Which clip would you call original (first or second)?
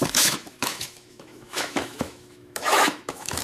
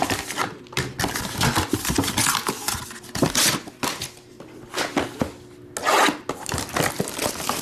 second